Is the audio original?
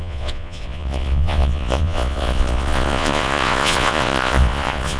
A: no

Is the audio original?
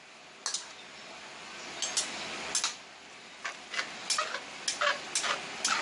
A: yes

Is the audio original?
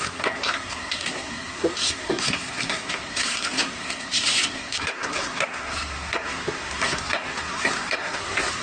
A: no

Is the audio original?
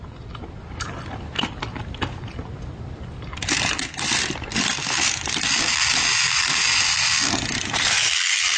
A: yes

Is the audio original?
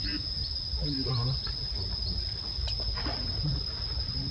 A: yes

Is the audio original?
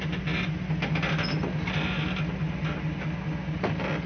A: yes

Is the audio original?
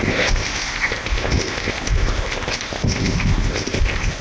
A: no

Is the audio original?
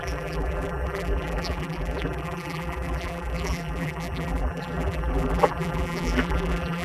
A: no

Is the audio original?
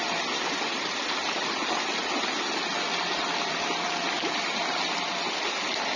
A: yes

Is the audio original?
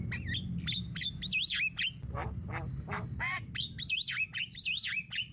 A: yes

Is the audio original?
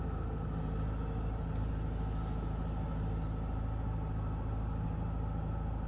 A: yes